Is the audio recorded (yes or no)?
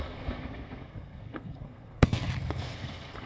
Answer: no